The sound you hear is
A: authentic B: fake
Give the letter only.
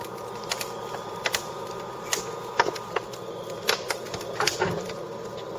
B